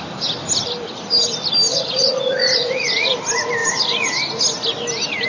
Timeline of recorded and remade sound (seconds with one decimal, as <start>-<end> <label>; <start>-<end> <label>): 0.0-1.7 recorded; 1.7-2.9 remade; 2.9-5.3 recorded